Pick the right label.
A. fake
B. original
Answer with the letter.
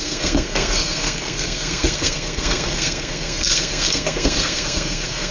A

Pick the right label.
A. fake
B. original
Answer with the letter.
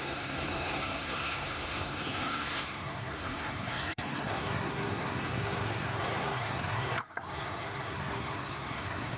A